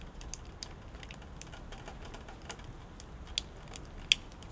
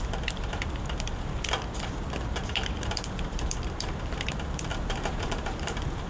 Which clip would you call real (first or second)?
first